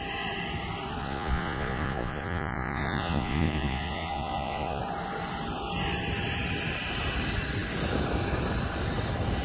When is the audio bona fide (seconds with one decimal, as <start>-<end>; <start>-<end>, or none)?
0.0-1.0; 4.8-9.4